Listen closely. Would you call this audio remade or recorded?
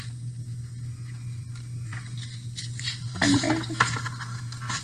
recorded